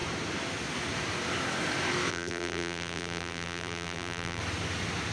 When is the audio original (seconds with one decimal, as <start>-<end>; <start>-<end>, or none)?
0.0-2.1; 4.4-5.1